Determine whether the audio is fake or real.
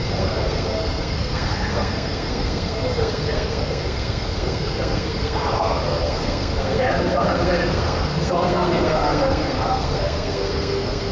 fake